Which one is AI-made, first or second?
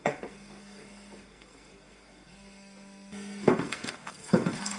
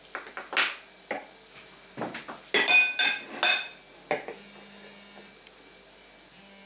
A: first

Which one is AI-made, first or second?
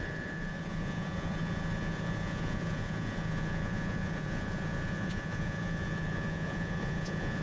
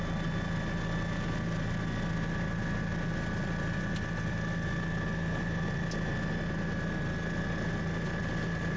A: first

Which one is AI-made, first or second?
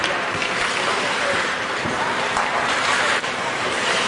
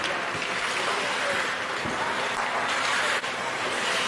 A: first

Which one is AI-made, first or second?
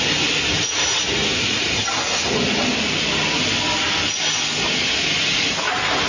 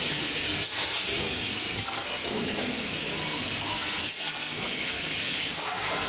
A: second